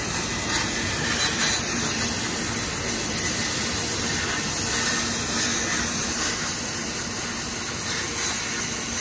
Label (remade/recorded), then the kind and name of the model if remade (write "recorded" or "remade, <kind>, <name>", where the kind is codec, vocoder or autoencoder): recorded